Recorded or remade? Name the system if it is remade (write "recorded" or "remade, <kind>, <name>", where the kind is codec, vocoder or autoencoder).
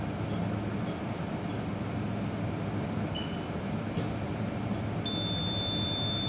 recorded